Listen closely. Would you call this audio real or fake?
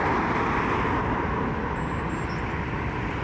real